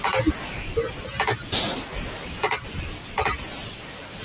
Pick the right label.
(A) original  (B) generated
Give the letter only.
A